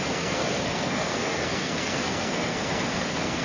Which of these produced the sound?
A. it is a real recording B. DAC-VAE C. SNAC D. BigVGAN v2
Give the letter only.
C